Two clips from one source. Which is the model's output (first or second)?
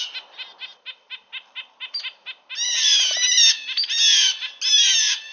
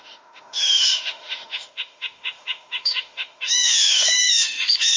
second